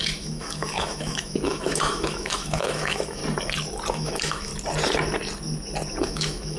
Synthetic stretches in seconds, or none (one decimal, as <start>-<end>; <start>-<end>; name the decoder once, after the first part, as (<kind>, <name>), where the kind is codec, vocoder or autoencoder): 0.0-3.2 (autoencoder, DAC-VAE); 3.9-4.5; 6.0-6.6